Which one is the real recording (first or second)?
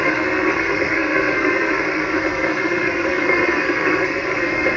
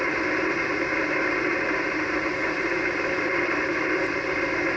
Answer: second